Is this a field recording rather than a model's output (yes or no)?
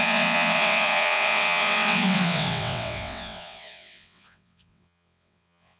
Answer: no